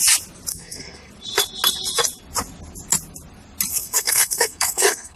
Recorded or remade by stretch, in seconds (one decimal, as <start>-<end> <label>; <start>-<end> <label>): 0.0-0.5 recorded; 0.5-1.1 remade; 1.1-3.7 recorded; 3.7-5.2 remade